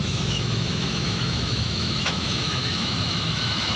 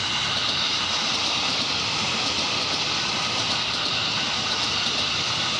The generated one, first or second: first